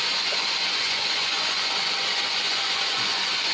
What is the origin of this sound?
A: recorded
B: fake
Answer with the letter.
B